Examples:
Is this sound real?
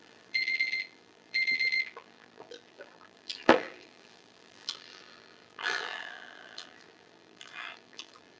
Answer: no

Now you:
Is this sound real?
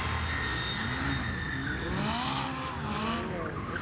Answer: yes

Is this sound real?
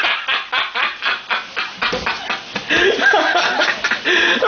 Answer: yes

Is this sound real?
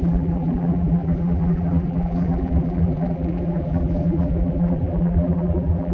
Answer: no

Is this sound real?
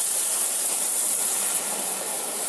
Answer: no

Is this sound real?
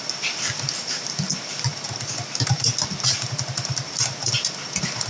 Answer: yes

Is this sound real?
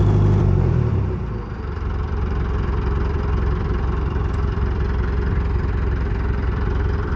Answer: no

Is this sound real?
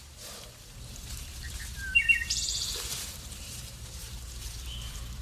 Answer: no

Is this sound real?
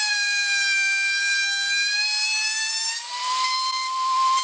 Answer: no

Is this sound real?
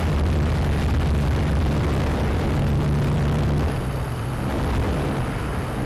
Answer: yes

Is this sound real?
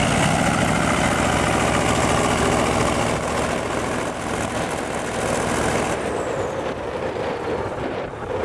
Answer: yes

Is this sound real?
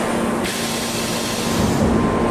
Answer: yes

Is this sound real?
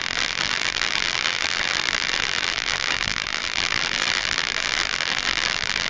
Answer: no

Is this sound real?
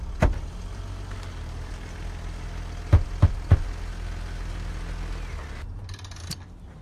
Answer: yes